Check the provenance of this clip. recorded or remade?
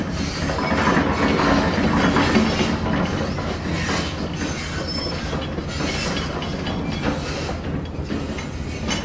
recorded